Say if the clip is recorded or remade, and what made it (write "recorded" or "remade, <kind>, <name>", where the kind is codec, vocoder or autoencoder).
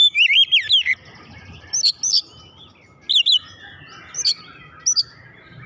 recorded